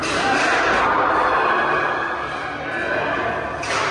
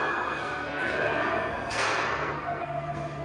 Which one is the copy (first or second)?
second